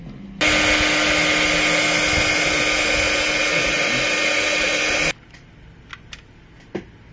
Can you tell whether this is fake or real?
real